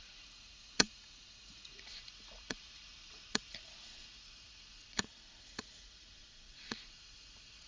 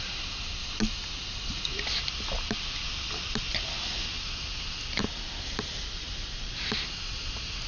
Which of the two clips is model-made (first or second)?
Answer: first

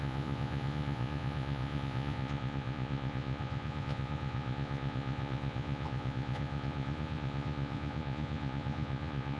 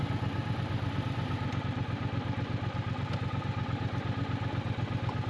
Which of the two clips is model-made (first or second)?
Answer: first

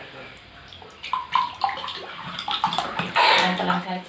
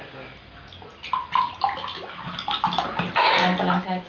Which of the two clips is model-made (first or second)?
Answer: first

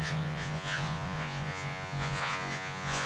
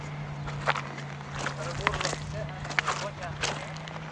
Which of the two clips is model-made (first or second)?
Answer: first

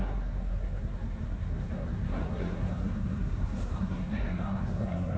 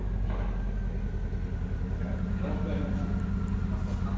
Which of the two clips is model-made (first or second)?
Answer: first